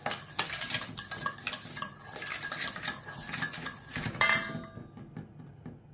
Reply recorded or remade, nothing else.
recorded